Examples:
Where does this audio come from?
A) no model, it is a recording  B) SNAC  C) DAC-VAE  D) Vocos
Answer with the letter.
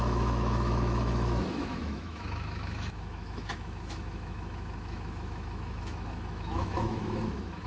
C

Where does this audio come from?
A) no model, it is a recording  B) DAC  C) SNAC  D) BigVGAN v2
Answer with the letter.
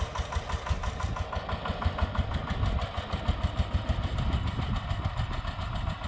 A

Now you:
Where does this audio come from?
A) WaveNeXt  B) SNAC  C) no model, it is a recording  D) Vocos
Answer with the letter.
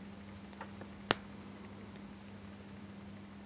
C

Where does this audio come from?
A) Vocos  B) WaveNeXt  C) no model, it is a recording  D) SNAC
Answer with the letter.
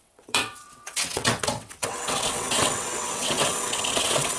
B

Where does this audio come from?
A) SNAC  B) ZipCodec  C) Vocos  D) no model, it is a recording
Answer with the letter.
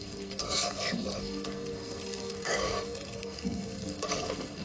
A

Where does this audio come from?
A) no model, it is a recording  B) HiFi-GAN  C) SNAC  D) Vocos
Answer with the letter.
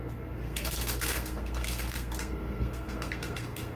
C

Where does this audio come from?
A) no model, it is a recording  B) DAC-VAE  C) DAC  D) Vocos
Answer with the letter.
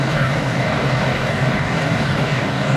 C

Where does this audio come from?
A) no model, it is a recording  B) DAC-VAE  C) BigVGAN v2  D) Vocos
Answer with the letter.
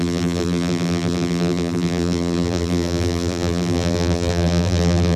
C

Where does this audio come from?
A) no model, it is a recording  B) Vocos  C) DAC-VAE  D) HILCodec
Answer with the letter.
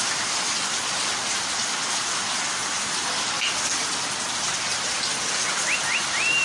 A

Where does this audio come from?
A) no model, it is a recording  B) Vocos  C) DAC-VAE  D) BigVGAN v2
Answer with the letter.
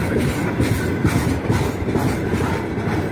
A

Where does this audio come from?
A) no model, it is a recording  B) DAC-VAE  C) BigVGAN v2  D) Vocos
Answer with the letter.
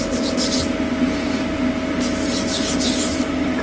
A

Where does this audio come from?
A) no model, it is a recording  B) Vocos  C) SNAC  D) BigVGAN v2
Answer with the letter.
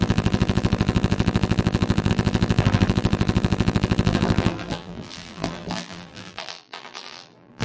D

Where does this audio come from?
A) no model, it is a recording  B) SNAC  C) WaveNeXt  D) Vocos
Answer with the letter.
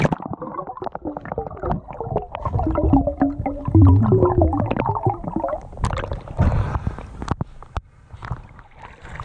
A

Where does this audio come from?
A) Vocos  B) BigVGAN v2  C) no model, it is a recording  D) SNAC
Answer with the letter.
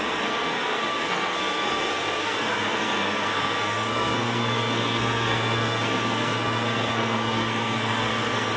D